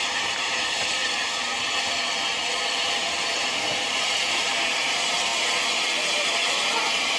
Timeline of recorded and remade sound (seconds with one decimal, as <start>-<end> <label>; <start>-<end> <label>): 0.0-1.0 remade; 1.0-2.3 recorded; 2.3-5.3 remade; 5.3-6.1 recorded; 6.1-7.2 remade